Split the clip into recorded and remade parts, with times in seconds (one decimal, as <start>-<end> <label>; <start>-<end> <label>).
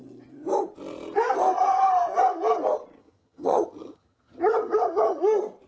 0.0-3.0 recorded; 3.0-5.2 remade; 5.2-5.7 recorded